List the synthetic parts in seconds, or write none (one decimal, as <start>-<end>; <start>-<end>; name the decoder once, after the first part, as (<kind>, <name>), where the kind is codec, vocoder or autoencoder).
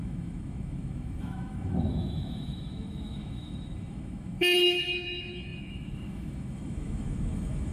0.0-7.7 (autoencoder, DAC-VAE)